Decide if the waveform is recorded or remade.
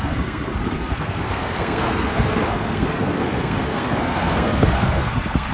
remade